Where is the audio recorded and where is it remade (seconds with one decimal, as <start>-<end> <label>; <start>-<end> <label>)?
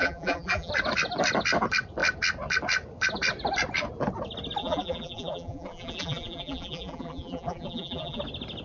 0.0-0.7 remade; 0.7-4.6 recorded; 4.6-8.2 remade; 8.2-8.6 recorded